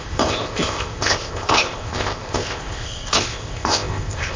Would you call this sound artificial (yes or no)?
yes